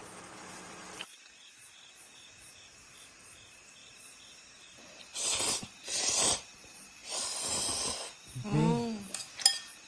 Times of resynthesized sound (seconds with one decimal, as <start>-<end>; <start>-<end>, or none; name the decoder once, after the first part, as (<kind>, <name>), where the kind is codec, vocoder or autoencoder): 0.0-0.9 (vocoder, BigVGAN v2); 3.8-5.8

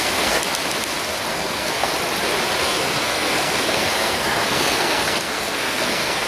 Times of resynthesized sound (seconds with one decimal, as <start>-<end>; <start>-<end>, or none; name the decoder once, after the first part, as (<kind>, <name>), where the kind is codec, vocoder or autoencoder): 0.0-0.4 (codec, SNAC); 1.3-1.9; 2.6-6.3

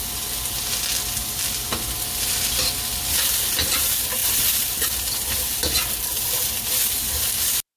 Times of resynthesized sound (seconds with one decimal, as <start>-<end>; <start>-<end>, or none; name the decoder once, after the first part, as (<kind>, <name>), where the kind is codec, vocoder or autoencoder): none

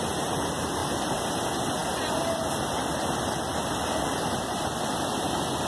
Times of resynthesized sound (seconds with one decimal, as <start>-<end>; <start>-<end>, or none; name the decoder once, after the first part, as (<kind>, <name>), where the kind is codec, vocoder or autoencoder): 0.8-1.3 (vocoder, BigVGAN v2); 1.8-5.2

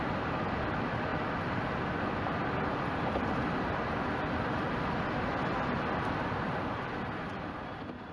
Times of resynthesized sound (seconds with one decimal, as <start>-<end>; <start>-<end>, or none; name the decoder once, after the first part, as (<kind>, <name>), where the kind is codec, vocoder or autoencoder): none

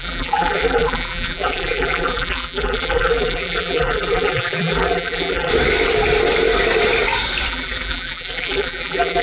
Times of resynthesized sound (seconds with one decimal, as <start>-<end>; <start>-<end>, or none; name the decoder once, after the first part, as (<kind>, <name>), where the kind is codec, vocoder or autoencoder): 0.0-5.5 (vocoder, BigVGAN v2); 7.5-9.2

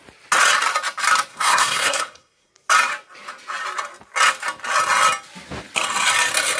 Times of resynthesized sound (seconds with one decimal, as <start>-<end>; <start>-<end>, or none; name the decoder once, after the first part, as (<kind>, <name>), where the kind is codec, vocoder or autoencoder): 1.3-2.5 (codec, SNAC)